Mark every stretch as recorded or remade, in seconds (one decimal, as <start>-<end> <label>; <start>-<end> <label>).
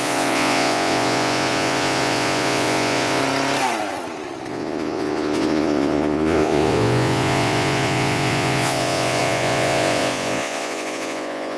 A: 0.0-3.2 remade; 3.2-4.5 recorded; 4.5-11.6 remade